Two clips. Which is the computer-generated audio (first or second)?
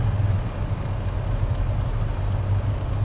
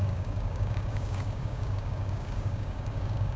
second